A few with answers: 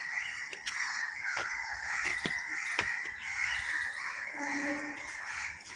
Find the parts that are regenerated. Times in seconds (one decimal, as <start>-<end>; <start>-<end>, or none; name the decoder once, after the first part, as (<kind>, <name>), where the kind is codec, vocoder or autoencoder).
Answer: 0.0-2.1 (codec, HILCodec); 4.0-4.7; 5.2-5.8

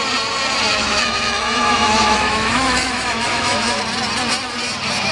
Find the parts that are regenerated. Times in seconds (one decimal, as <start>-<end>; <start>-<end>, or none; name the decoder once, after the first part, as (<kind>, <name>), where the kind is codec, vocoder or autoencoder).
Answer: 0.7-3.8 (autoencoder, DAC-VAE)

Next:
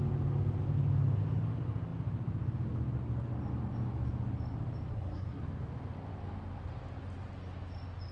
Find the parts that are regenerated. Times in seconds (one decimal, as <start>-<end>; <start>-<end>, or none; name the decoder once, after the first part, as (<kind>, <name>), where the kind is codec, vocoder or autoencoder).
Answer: 4.9-5.4 (codec, SNAC)

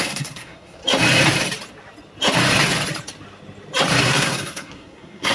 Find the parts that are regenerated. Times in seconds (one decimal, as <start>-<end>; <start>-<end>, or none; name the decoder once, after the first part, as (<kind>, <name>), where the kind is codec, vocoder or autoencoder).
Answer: 0.0-0.8 (codec, SNAC); 4.0-5.3

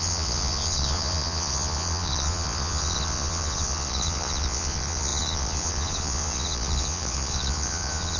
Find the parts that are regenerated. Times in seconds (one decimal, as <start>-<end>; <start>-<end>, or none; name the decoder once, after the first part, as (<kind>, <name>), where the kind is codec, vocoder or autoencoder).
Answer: 0.0-8.2 (vocoder, Vocos)